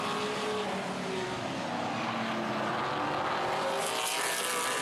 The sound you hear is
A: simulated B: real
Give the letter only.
B